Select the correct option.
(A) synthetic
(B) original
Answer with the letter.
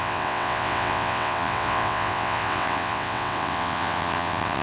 A